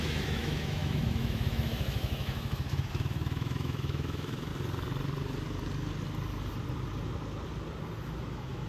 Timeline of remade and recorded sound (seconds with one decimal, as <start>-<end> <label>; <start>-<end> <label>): 0.0-4.5 remade; 4.5-8.2 recorded; 8.2-8.7 remade

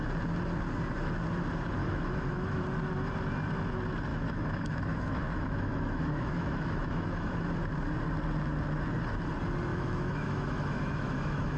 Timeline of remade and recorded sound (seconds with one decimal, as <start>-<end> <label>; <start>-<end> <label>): 0.0-1.8 recorded; 1.8-2.6 remade; 2.6-4.1 recorded; 4.1-7.5 remade; 7.5-9.7 recorded; 9.7-11.6 remade

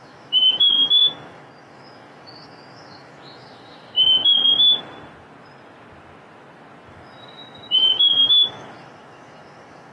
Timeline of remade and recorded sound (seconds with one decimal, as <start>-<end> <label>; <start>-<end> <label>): 0.0-4.5 remade; 4.5-6.9 recorded; 6.9-9.9 remade

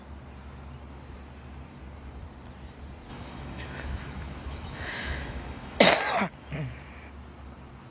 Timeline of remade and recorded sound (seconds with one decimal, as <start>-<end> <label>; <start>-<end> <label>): 0.0-3.1 recorded; 3.1-5.8 remade; 5.8-7.9 recorded